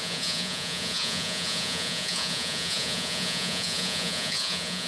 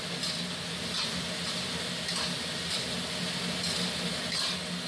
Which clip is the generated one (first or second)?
first